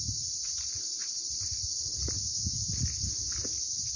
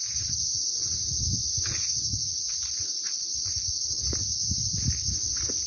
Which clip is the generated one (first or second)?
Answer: first